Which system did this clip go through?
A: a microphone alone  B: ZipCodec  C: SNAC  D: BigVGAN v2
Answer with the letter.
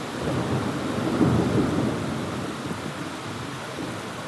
A